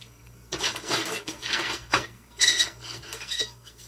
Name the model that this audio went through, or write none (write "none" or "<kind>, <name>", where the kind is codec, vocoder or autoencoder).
codec, SNAC